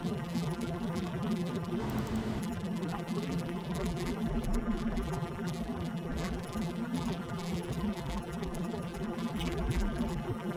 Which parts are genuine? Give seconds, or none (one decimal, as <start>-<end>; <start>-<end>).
1.8-2.4